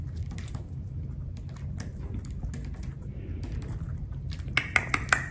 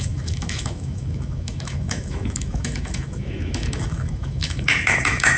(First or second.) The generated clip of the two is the second